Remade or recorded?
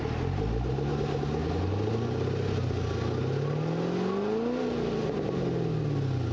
recorded